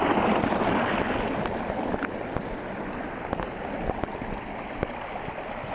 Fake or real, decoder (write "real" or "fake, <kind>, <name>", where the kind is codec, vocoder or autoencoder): real